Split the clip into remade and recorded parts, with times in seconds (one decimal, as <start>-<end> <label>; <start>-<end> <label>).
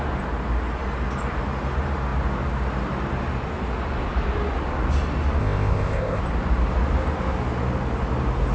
0.0-5.4 recorded; 5.4-6.2 remade; 6.2-8.5 recorded